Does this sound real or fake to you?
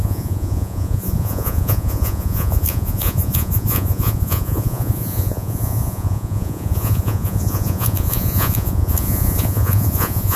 fake